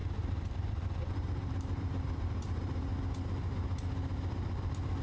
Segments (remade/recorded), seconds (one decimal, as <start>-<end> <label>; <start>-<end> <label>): 0.0-2.9 remade; 2.9-5.0 recorded